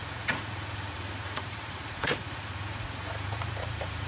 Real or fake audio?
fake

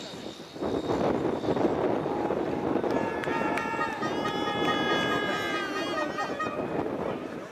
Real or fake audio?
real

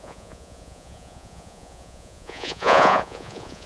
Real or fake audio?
fake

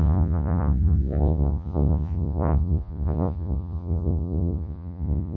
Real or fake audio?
fake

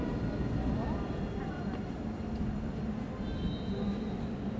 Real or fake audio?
real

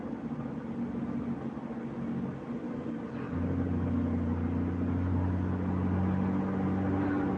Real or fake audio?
real